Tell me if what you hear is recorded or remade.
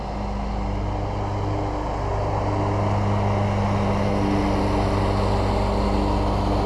recorded